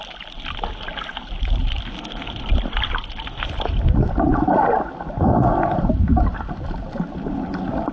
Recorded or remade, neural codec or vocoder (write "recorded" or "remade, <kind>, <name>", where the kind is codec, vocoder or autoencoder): recorded